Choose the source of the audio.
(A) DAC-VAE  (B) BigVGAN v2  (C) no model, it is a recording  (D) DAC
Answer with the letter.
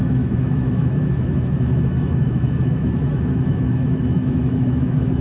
A